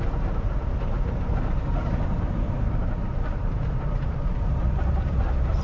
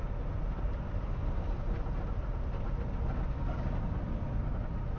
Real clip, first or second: second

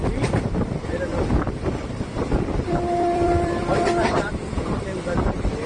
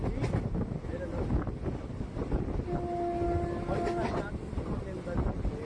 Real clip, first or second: second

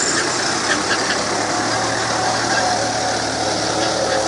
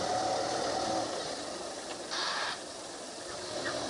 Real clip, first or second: first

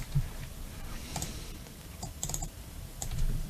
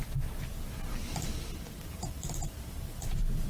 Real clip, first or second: second